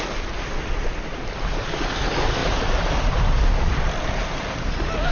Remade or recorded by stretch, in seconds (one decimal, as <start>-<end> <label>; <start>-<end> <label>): 0.0-5.1 recorded